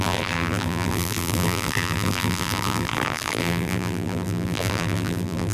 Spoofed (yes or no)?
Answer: yes